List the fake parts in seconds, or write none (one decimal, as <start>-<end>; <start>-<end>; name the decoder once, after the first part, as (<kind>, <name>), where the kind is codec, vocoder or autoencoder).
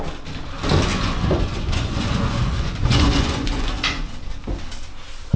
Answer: 0.9-4.1 (vocoder, Vocos)